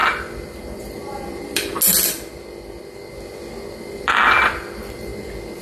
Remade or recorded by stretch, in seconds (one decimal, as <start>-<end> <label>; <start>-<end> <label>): 0.0-1.7 remade; 1.7-3.8 recorded; 3.8-5.1 remade; 5.1-5.6 recorded